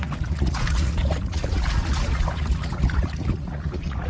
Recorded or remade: remade